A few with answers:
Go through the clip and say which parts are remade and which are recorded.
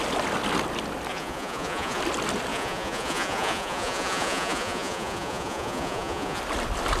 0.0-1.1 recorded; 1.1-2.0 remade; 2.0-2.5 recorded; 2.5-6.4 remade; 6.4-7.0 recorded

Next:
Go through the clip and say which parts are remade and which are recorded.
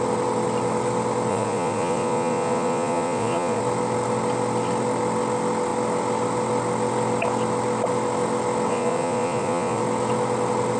0.0-1.3 recorded; 1.3-3.6 remade; 3.6-8.7 recorded; 8.7-9.8 remade; 9.8-10.8 recorded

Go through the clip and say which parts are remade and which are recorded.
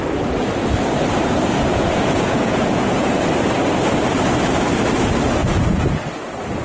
0.0-1.7 recorded; 1.7-3.1 remade; 3.1-5.4 recorded; 5.4-6.0 remade; 6.0-6.6 recorded